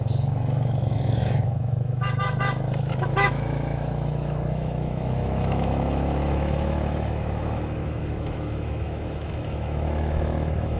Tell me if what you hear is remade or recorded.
remade